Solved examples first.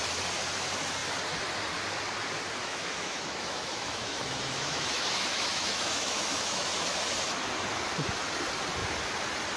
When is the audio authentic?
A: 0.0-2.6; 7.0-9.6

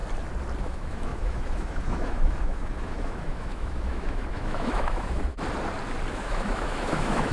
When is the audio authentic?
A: 0.0-0.6; 5.3-6.1

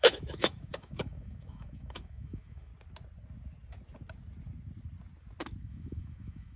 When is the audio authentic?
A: 2.7-5.6

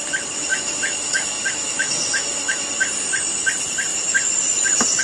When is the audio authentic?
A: 0.0-0.5; 2.7-5.0

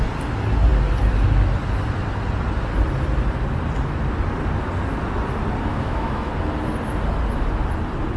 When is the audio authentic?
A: 0.0-5.7; 6.3-8.2